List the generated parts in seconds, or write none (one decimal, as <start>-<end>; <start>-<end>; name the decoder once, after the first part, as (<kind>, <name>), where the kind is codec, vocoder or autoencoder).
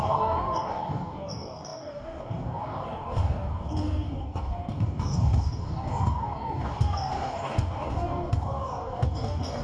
0.0-9.6 (codec, DAC)